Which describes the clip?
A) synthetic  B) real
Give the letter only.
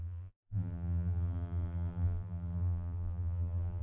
A